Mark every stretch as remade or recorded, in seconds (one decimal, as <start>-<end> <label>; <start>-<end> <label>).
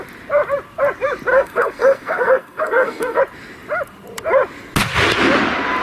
0.0-1.3 recorded; 1.3-3.2 remade; 3.2-5.8 recorded